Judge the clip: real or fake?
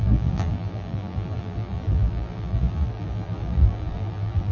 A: fake